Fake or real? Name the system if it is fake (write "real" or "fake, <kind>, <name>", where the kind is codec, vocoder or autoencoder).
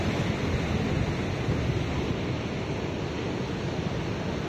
real